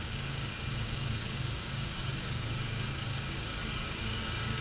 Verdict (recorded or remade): remade